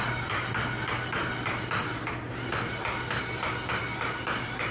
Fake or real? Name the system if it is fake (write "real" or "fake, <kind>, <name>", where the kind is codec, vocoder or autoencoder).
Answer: real